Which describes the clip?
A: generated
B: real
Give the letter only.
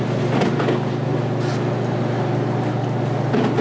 B